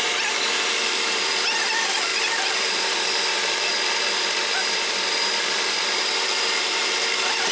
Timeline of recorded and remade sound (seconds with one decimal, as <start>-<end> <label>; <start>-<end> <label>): 0.0-7.5 remade